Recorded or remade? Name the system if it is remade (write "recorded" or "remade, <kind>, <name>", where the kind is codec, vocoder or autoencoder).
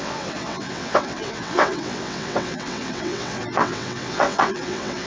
remade, vocoder, WaveNeXt